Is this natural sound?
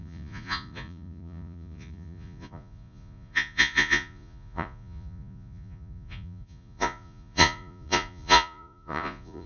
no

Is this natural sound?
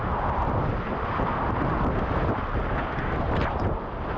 yes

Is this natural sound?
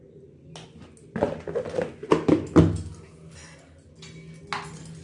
yes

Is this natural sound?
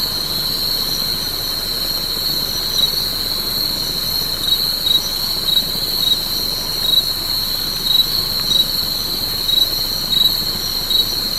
yes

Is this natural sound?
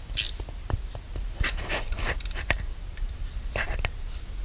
yes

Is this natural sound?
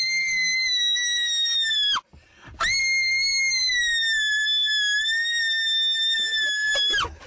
yes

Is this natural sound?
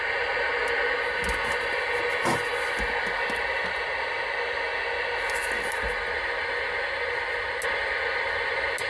yes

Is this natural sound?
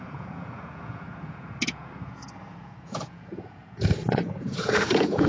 no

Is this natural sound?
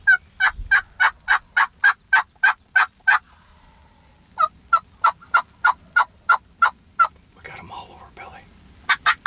yes